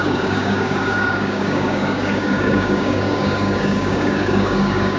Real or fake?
fake